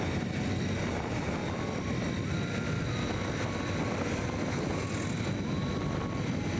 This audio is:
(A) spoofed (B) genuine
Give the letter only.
B